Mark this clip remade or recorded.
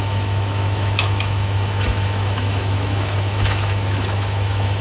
remade